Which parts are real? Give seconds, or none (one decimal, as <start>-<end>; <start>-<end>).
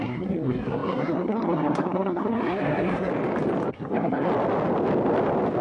3.1-3.7; 4.3-5.6